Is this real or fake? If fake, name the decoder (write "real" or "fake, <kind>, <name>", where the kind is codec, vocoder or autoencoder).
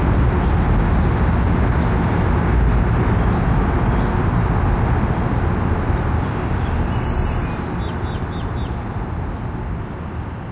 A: real